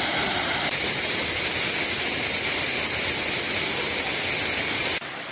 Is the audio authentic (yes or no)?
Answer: yes